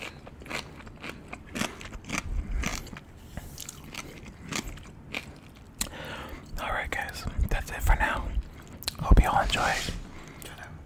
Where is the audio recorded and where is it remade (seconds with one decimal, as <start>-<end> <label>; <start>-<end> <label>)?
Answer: 0.0-2.7 recorded; 2.7-6.6 remade; 6.6-10.9 recorded